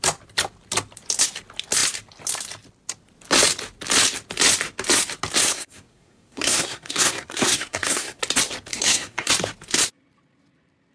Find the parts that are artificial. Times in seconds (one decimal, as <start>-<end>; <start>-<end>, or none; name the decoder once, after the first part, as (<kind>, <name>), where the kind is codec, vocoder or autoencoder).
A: 5.5-8.2 (codec, SNAC); 8.7-9.3